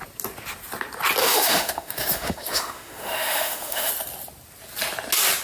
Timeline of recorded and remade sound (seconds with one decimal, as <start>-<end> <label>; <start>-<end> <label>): 0.0-1.2 recorded; 1.2-3.9 remade; 3.9-5.4 recorded